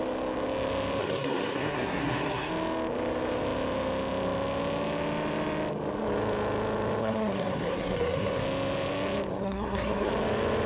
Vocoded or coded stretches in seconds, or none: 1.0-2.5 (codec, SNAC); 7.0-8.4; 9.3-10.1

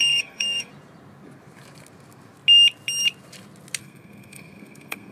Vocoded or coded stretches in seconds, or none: 0.0-0.7 (codec, SNAC); 3.8-5.1

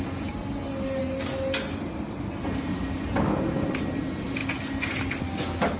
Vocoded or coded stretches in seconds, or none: none

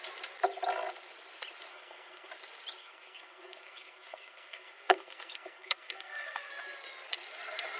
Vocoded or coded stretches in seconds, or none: 1.7-2.3 (codec, SNAC); 2.8-6.5

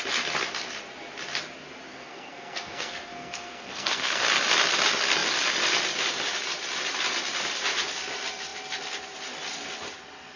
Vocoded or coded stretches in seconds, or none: 1.9-4.2 (codec, SNAC)